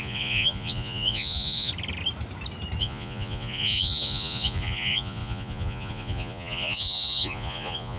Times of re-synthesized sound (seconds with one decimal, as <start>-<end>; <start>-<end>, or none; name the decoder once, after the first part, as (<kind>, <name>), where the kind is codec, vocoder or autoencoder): 0.0-1.7 (vocoder, Vocos); 2.8-8.0